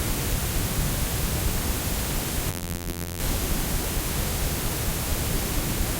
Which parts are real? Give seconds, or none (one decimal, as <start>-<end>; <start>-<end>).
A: 0.0-2.5; 3.2-6.0